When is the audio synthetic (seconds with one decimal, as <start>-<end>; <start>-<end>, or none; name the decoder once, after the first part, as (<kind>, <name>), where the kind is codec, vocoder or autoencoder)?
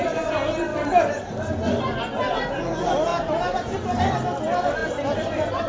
3.1-4.0 (vocoder, BigVGAN v2); 4.8-5.7